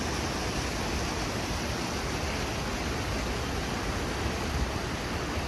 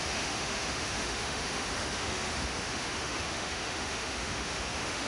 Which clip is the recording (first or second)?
first